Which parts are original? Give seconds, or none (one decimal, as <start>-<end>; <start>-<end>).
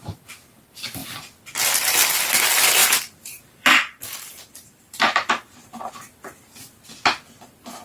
0.0-2.8; 5.9-7.8